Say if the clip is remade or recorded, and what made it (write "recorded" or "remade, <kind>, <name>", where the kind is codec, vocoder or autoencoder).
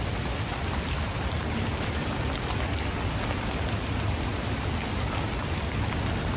recorded